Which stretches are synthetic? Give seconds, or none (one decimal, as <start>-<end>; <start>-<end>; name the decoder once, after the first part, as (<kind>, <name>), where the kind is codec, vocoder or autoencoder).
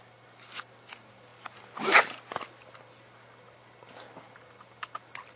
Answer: none